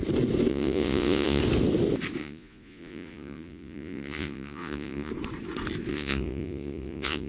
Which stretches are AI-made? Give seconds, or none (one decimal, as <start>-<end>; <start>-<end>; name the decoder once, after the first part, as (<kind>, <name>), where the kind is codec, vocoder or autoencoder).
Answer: 0.5-1.4 (vocoder, Vocos); 2.2-5.1; 5.9-7.3